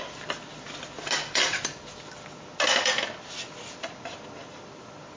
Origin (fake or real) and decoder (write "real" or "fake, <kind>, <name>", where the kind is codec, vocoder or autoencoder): real